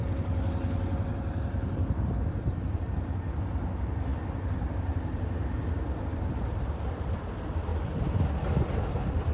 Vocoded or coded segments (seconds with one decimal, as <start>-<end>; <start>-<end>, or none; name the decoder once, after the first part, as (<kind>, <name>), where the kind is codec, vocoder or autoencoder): 0.0-4.1 (vocoder, BigVGAN v2); 4.9-7.7; 8.9-9.3